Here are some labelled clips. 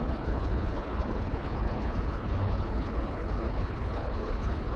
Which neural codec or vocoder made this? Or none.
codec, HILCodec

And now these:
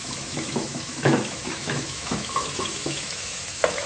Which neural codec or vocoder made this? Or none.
autoencoder, DAC-VAE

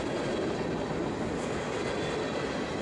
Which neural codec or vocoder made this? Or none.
none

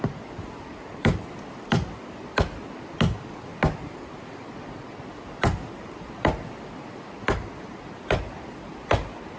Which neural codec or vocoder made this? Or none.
none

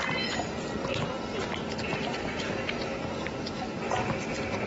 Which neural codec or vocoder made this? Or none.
none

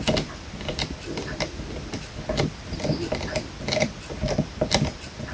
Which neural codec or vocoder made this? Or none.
none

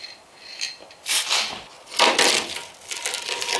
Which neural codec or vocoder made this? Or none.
none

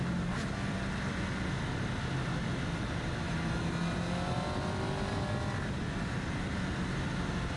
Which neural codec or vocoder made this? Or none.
none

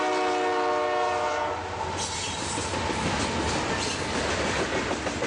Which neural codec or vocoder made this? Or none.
none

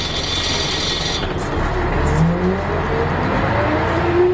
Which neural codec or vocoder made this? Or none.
none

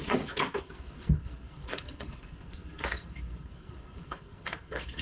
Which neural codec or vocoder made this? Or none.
codec, SNAC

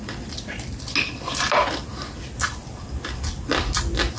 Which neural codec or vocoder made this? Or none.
none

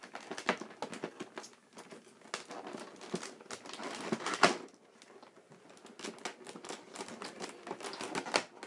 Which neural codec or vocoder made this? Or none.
none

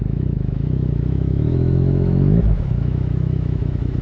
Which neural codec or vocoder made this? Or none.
autoencoder, DAC-VAE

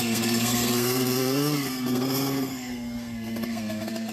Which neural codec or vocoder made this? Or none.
codec, SNAC